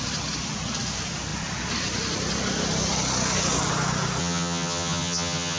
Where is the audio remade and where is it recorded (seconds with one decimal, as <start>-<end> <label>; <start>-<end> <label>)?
0.0-4.2 recorded; 4.2-5.6 remade